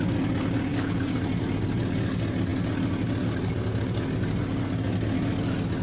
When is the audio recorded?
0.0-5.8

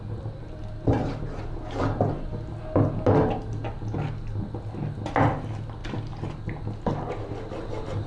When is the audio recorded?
0.0-8.1

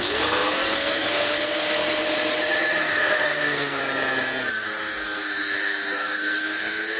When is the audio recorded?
1.8-2.8; 3.8-4.5

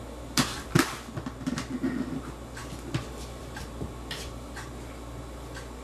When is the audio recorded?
0.0-5.8

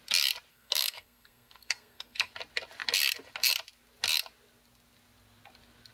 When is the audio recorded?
0.0-0.5; 2.3-5.9